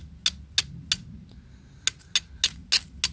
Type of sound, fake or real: real